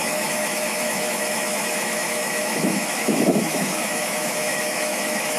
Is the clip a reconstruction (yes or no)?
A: yes